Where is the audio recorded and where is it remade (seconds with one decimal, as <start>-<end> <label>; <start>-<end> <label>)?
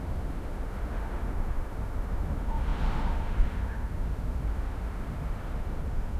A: 0.0-6.2 remade